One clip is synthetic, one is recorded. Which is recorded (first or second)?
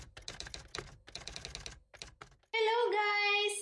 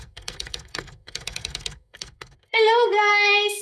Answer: first